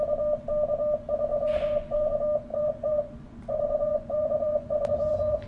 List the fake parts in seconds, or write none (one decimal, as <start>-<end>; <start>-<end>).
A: 1.3-2.1; 2.5-5.5

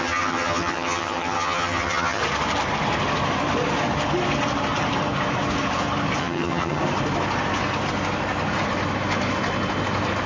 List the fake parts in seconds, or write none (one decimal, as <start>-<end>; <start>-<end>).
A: 0.0-2.2; 6.2-6.8

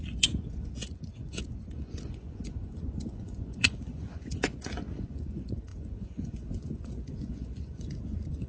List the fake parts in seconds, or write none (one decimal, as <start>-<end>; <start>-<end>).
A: 0.0-8.5